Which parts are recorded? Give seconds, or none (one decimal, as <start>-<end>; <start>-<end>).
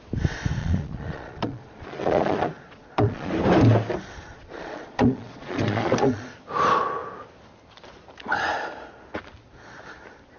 0.0-0.6; 3.3-4.3; 6.3-10.4